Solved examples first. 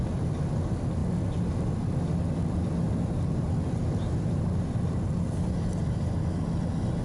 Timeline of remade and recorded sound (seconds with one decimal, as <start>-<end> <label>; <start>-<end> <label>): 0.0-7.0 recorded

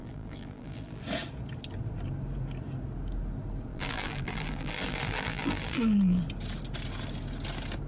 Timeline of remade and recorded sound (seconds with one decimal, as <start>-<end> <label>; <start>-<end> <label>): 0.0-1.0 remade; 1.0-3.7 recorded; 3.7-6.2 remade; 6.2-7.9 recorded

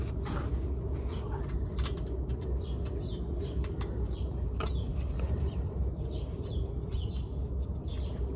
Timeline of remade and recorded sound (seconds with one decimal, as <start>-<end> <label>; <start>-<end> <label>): 0.0-4.9 recorded; 4.9-7.1 remade; 7.1-8.4 recorded

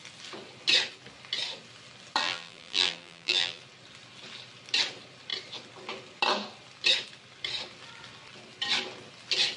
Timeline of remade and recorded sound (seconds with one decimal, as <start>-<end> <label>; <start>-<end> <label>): 0.0-2.2 recorded; 2.2-3.6 remade; 3.6-9.6 recorded

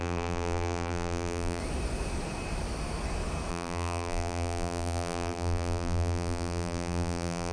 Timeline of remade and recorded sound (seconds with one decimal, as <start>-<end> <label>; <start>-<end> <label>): 0.0-1.6 remade; 1.6-3.5 recorded; 3.5-7.5 remade

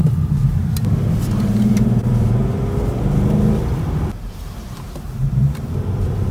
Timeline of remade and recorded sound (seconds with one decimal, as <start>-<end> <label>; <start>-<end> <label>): 0.0-1.2 recorded; 1.2-2.4 remade; 2.4-4.2 recorded; 4.2-6.3 remade

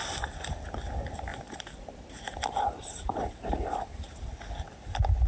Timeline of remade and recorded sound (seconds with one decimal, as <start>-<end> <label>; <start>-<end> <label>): 0.0-1.3 recorded; 1.3-4.5 remade; 4.5-5.3 recorded

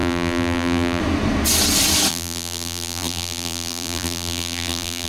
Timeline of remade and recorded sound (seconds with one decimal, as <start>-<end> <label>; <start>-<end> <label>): 0.0-1.0 remade; 1.0-2.1 recorded; 2.1-5.1 remade